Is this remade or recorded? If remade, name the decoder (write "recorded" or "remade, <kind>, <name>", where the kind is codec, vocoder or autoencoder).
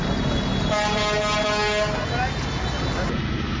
recorded